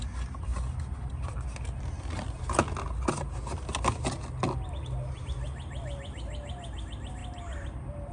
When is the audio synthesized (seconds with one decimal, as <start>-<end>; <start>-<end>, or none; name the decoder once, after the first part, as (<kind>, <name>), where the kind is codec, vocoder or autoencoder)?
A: none

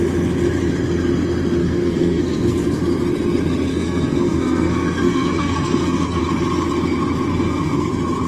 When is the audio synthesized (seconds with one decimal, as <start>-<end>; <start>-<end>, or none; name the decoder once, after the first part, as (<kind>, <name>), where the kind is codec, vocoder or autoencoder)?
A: 1.6-2.8 (codec, SNAC); 3.7-6.2; 7.3-7.9

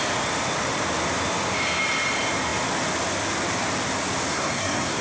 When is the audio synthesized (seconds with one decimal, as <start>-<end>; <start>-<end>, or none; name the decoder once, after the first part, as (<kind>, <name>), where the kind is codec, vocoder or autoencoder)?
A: 4.3-5.0 (codec, SNAC)

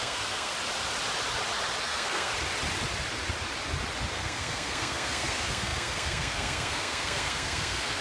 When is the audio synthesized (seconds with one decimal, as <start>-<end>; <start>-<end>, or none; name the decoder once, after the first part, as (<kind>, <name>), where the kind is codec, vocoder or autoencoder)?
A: 0.0-0.5 (codec, SNAC); 1.8-2.3; 4.1-8.0

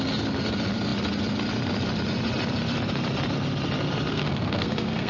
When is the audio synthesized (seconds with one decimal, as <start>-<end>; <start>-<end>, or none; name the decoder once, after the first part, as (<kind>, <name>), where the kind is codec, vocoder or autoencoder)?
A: 4.1-5.1 (codec, SNAC)

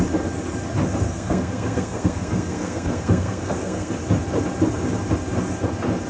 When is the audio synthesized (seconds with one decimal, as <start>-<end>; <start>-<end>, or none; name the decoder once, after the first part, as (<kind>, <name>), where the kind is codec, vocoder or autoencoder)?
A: 0.9-3.9 (codec, SNAC)

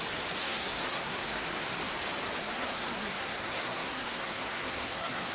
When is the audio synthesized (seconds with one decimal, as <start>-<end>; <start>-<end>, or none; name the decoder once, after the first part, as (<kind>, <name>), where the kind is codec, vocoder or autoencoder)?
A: 0.4-1.5 (codec, SNAC); 2.4-5.3